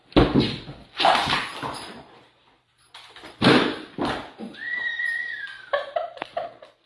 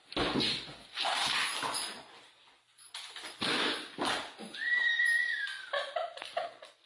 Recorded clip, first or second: second